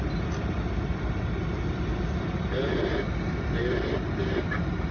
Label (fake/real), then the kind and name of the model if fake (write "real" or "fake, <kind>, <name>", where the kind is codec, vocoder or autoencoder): real